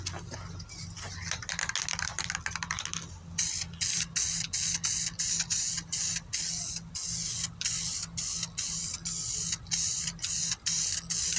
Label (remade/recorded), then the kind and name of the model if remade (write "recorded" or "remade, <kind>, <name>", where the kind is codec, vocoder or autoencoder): recorded